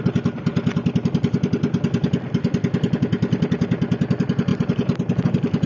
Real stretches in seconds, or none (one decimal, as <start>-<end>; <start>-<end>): 0.0-5.7